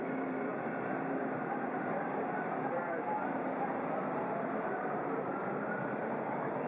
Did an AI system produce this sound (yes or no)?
yes